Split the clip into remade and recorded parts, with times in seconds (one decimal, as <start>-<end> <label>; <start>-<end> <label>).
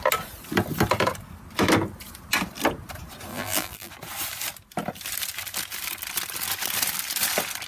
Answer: 0.0-3.3 recorded; 3.3-3.9 remade; 3.9-7.7 recorded